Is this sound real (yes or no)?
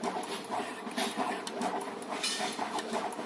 yes